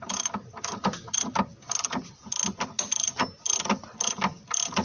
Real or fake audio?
real